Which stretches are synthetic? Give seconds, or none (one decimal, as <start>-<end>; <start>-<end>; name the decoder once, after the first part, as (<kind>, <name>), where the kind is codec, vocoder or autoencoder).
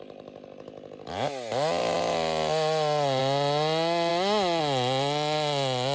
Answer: none